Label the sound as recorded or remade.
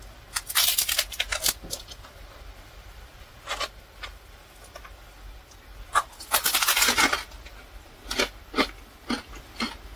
recorded